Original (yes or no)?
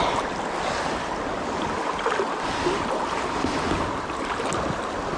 yes